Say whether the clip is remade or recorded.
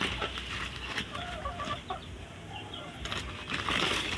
recorded